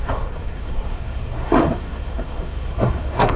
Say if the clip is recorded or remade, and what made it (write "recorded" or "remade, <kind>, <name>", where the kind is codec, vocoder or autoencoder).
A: remade, codec, SNAC